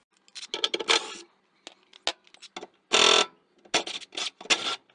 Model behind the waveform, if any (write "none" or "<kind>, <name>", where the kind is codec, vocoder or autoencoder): none